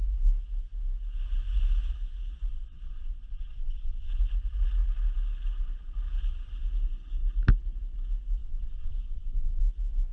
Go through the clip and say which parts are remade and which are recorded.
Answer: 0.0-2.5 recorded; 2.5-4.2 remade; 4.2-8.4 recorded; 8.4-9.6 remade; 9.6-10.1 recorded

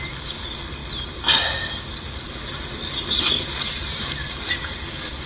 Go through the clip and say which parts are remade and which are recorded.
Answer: 0.0-5.3 recorded

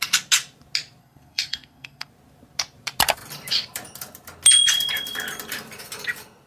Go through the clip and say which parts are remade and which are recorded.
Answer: 0.0-1.0 recorded; 1.0-2.1 remade; 2.1-6.5 recorded

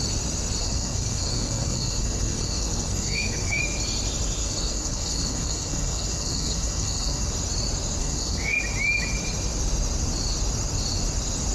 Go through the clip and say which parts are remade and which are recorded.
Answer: 0.0-0.6 recorded; 0.6-3.6 remade; 3.6-4.4 recorded; 4.4-7.3 remade; 7.3-8.0 recorded; 8.0-8.6 remade; 8.6-11.5 recorded